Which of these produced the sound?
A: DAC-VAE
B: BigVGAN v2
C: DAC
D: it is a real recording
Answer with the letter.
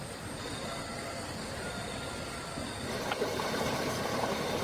B